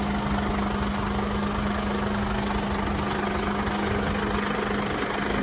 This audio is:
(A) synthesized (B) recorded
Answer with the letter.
B